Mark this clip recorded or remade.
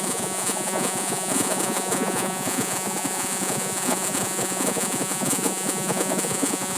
remade